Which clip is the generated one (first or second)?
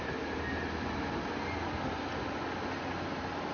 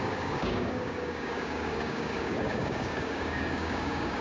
second